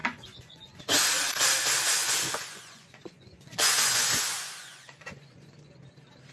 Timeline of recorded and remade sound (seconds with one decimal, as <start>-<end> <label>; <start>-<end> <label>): 0.0-0.8 remade; 0.8-2.0 recorded; 2.0-5.8 remade; 5.8-6.3 recorded